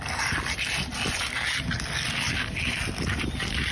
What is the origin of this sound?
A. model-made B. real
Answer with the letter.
B